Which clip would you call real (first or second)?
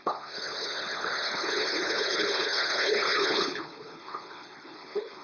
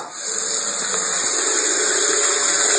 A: second